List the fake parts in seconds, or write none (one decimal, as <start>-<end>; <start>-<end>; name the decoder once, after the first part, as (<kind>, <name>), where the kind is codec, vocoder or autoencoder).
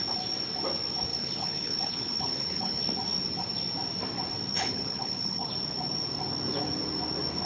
1.1-2.8 (codec, HILCodec); 4.5-5.5